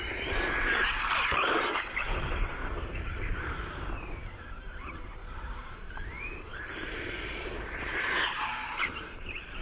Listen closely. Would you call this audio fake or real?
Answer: fake